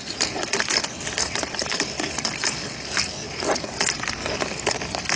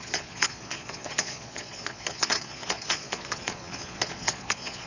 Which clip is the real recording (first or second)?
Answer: first